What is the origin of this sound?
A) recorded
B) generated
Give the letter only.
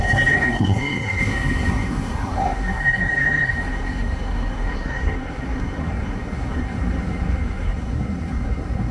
B